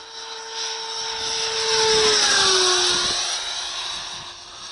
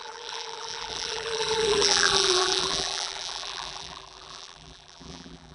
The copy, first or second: second